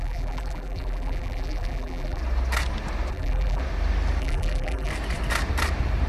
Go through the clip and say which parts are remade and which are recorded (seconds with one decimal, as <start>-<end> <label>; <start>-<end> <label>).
0.0-2.2 remade; 2.2-3.1 recorded; 3.1-3.6 remade; 3.6-4.2 recorded; 4.2-4.9 remade; 4.9-6.1 recorded